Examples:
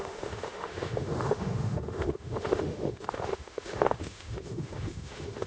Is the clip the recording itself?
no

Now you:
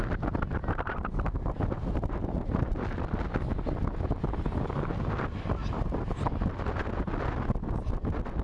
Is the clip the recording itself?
yes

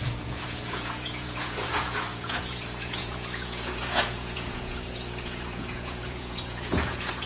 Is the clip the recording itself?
no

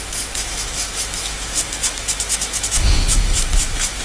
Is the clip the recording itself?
no